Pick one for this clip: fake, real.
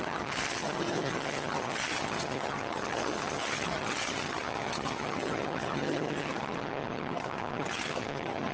fake